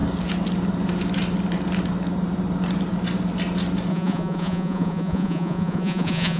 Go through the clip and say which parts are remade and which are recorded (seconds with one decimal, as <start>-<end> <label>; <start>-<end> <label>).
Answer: 0.0-3.9 recorded; 3.9-6.4 remade